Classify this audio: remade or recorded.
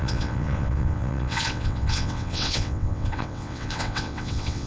remade